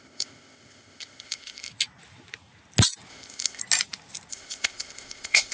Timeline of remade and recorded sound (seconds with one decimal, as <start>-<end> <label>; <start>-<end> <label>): 0.0-1.7 remade; 1.7-3.1 recorded; 3.1-3.6 remade; 3.6-4.3 recorded; 4.3-5.5 remade